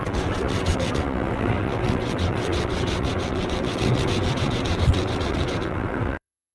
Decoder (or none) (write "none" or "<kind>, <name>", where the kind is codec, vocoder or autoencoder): vocoder, WaveNeXt